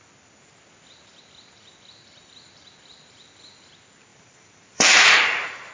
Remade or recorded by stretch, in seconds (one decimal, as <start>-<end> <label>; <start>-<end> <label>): 0.0-4.1 recorded; 4.1-5.7 remade